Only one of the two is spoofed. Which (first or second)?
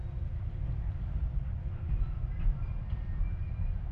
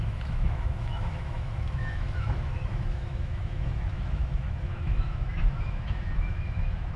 second